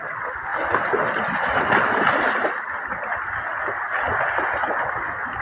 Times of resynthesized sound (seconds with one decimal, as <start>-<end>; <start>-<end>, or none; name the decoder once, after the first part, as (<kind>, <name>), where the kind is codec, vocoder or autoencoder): 0.5-2.8 (vocoder, BigVGAN v2)